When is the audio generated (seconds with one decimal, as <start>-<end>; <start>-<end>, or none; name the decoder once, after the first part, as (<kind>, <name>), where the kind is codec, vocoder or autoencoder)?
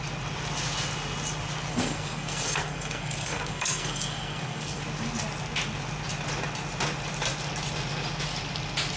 1.7-4.8 (codec, SNAC)